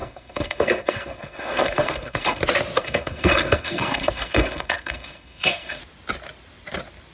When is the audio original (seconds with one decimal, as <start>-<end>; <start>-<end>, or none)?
2.4-2.8; 5.8-7.1